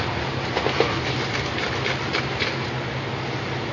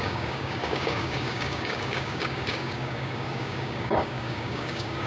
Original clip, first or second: first